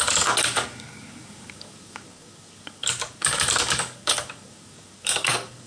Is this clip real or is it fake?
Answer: fake